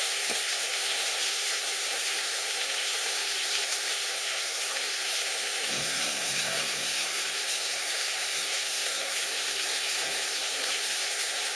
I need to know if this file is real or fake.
fake